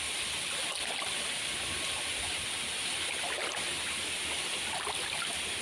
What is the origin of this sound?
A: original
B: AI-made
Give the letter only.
A